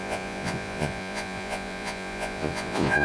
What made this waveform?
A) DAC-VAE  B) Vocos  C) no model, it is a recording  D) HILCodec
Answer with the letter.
B